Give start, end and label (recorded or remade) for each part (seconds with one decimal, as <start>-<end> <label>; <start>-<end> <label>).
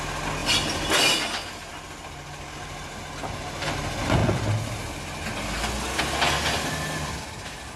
0.0-7.8 recorded